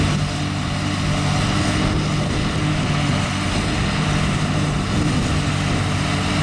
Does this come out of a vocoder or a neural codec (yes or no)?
no